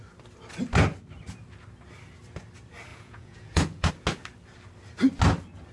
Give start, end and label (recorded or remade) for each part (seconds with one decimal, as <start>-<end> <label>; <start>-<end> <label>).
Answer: 0.0-2.9 recorded; 2.9-3.9 remade; 3.9-5.7 recorded